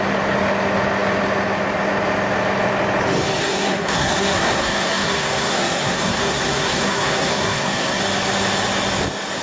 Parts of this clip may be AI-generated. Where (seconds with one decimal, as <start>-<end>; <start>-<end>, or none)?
3.4-8.0